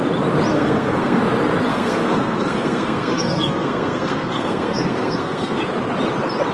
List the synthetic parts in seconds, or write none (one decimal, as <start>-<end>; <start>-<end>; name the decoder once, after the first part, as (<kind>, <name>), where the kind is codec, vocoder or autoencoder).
0.5-1.2 (codec, SNAC); 1.7-5.6